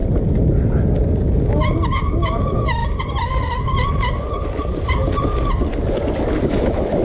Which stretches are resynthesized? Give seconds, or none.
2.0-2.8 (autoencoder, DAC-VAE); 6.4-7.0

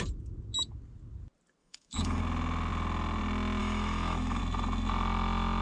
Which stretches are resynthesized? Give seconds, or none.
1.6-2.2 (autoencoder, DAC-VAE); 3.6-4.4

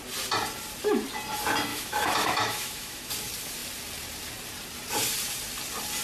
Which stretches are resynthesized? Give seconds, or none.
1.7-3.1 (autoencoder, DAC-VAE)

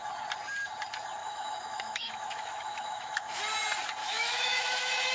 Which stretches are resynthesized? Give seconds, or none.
1.2-3.4 (autoencoder, DAC-VAE); 4.0-5.1

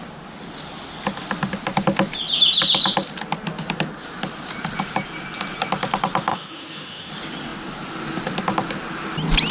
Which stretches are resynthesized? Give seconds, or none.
6.3-7.1 (autoencoder, DAC-VAE)